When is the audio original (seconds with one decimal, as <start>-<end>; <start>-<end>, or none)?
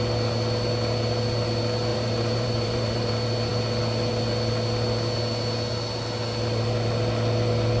0.0-1.9; 3.1-7.8